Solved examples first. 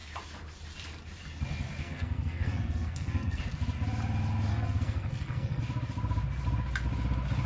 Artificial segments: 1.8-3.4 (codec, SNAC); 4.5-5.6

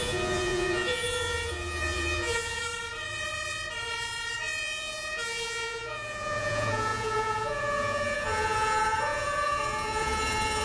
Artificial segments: 0.0-2.6 (vocoder, Vocos); 4.6-10.6

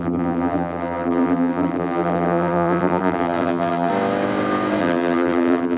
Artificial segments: 0.0-3.9 (vocoder, BigVGAN v2); 4.8-5.8

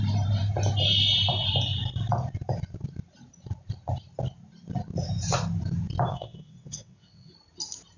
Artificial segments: 6.1-7.3 (vocoder, WaveNeXt)

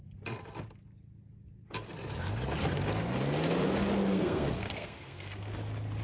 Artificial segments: 4.1-5.5 (codec, SNAC)

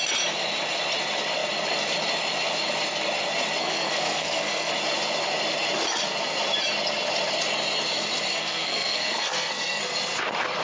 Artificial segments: 3.6-4.7 (codec, SNAC); 8.3-9.8

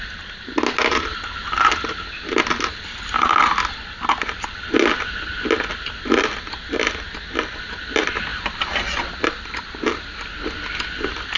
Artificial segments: none

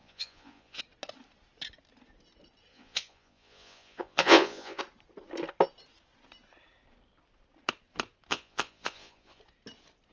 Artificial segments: 0.0-0.8 (vocoder, Vocos); 2.7-4.8; 8.3-9.4